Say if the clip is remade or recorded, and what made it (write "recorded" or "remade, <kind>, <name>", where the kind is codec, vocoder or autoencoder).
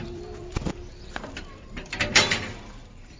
remade, vocoder, BigVGAN v2